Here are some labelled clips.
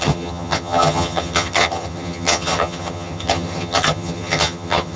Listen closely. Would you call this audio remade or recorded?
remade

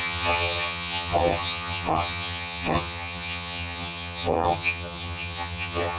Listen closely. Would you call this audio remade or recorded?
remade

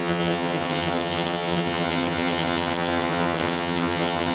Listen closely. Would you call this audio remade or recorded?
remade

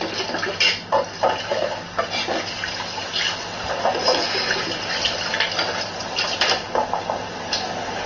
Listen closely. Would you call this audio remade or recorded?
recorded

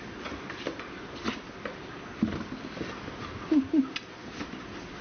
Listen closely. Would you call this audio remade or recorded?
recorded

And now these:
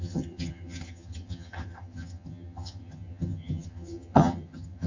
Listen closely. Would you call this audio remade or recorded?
remade